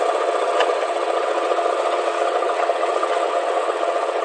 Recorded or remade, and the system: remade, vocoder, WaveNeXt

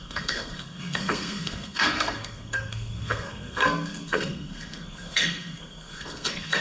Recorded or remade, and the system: remade, codec, SNAC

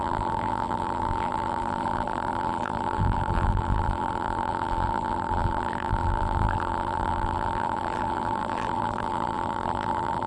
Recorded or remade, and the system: remade, vocoder, BigVGAN v2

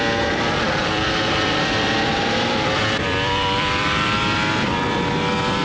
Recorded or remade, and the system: remade, vocoder, BigVGAN v2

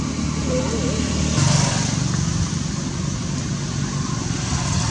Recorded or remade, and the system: recorded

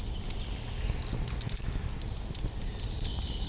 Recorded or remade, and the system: recorded